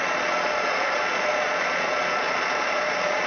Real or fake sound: fake